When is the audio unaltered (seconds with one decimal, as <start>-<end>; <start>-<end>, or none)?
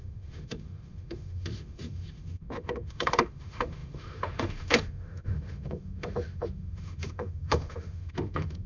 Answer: none